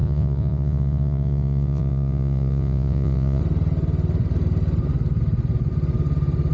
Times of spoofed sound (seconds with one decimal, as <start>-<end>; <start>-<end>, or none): 0.0-3.4